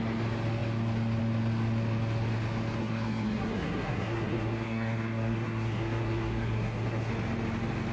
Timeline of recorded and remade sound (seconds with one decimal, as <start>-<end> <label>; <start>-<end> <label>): 0.0-2.8 recorded; 2.8-7.1 remade; 7.1-7.9 recorded